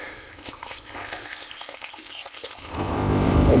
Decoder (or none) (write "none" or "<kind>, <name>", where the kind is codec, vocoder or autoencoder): codec, ZipCodec